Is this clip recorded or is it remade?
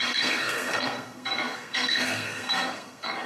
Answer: remade